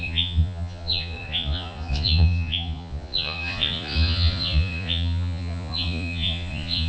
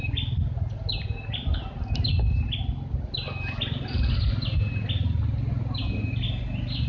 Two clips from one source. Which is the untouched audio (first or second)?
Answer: second